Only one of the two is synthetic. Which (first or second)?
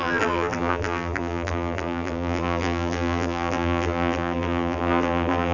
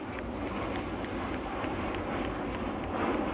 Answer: first